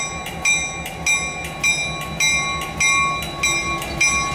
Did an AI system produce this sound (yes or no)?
no